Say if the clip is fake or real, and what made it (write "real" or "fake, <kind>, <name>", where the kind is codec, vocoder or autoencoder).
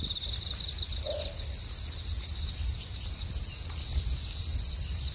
real